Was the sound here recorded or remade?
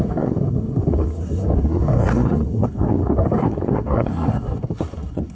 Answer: remade